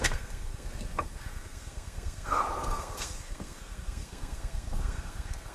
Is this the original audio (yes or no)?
no